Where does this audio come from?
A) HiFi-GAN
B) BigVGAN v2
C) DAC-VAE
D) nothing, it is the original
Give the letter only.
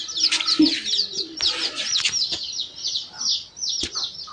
D